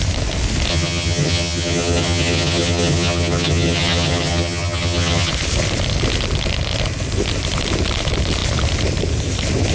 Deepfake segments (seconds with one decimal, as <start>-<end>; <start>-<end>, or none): 0.7-5.3